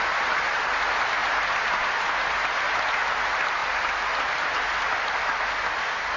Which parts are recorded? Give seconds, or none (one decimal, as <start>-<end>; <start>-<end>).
0.0-6.2